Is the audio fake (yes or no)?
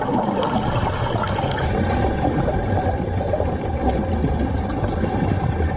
no